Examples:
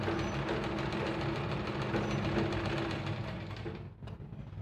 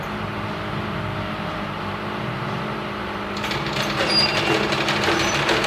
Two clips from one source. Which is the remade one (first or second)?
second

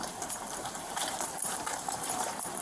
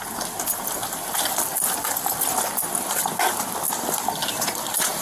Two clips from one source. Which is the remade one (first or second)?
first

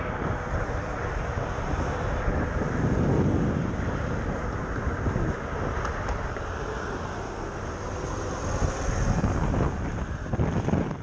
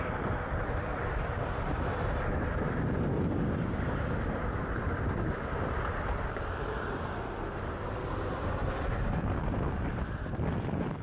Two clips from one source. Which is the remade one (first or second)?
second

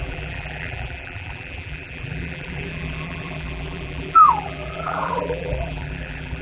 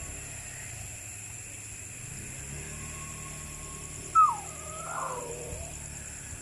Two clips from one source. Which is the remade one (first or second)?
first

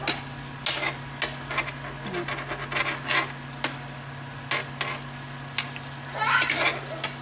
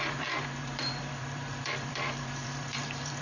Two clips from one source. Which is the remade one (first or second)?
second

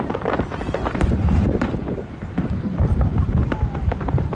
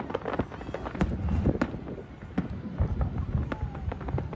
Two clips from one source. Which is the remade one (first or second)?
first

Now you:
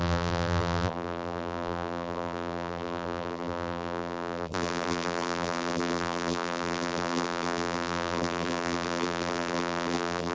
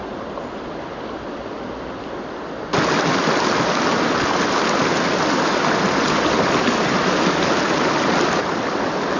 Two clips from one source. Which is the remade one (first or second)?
first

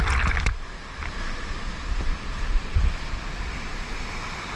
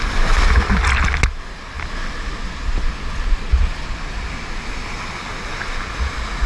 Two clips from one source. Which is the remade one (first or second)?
first